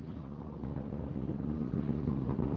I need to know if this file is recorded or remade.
remade